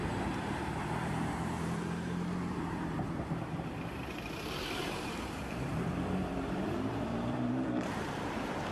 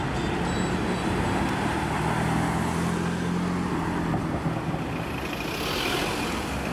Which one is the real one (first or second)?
second